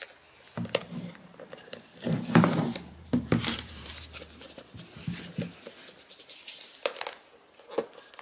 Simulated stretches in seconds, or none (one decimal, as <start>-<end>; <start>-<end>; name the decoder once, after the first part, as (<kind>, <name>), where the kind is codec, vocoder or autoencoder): 0.8-3.9 (vocoder, BigVGAN v2)